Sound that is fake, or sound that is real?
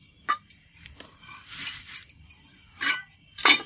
fake